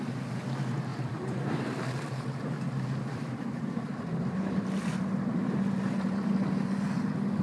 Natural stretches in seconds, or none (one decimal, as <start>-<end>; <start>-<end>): 0.0-0.9; 5.3-7.4